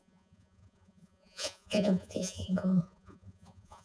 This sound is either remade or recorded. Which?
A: remade